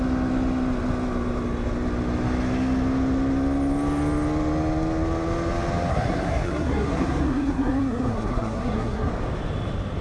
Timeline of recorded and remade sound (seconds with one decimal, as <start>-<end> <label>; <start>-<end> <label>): 0.0-5.9 recorded; 5.9-9.1 remade; 9.1-10.0 recorded